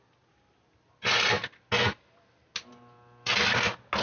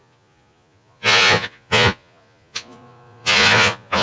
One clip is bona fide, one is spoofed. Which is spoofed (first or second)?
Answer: second